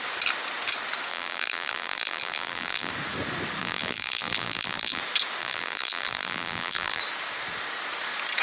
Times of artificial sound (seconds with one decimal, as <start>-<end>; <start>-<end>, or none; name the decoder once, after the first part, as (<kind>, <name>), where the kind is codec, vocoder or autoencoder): 1.1-2.9 (vocoder, BigVGAN v2); 3.6-5.0; 5.4-7.0